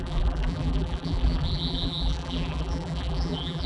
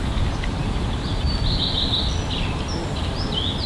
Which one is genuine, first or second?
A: second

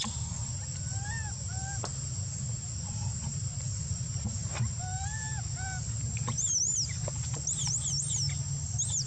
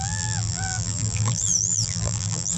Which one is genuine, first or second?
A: first